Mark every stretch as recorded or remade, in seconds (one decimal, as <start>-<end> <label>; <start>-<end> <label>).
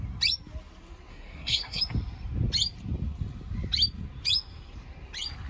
0.0-1.1 recorded; 1.1-1.8 remade; 1.8-5.5 recorded